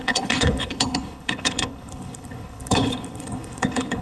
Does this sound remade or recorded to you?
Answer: remade